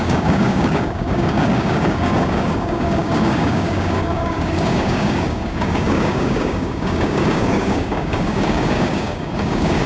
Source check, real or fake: fake